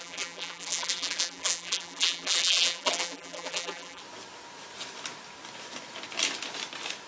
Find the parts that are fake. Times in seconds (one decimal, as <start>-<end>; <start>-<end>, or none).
0.0-4.0